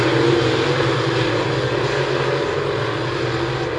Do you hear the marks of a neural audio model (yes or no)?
no